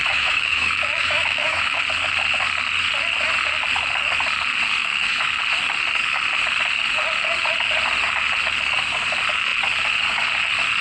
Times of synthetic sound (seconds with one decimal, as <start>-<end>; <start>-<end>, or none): 0.0-1.8; 4.8-5.4